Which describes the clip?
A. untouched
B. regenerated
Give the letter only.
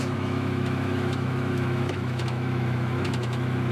B